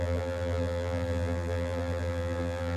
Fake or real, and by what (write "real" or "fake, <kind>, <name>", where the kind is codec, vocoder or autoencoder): fake, vocoder, BigVGAN v2